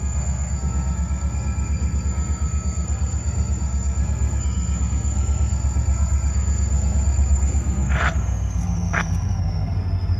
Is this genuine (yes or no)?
no